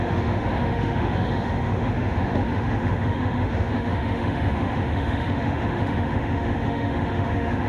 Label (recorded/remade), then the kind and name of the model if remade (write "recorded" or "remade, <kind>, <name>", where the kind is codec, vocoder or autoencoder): remade, autoencoder, DAC-VAE